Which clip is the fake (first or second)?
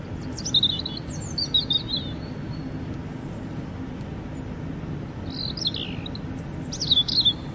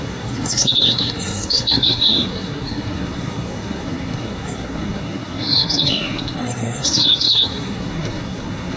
second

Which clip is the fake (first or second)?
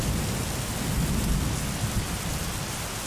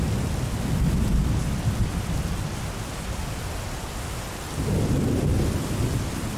second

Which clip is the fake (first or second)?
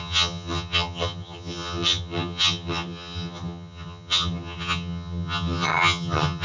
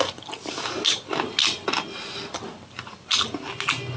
first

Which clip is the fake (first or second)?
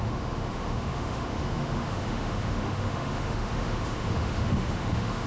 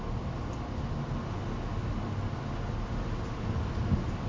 first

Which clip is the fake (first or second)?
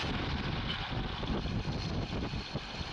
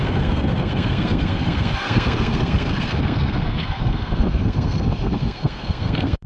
second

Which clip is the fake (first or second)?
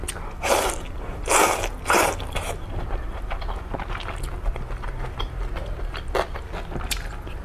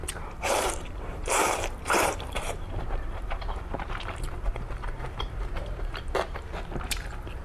second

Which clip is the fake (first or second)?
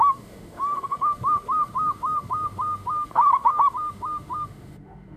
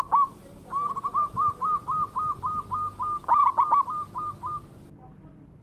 first